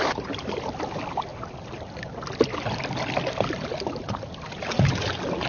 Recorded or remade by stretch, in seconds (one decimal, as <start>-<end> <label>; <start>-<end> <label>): 0.0-5.5 recorded